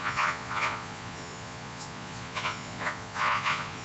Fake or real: fake